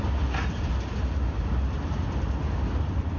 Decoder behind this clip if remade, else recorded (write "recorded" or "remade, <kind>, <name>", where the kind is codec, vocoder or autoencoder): recorded